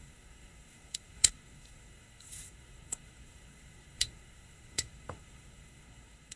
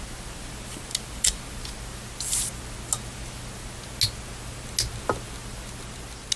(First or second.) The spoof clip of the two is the first